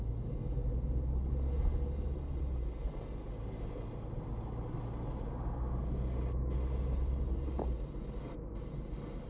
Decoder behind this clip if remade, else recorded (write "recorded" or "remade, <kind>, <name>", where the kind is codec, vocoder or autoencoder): recorded